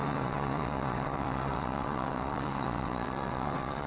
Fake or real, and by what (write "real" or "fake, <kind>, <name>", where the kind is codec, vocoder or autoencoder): fake, vocoder, WaveNeXt